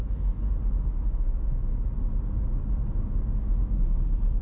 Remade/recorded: recorded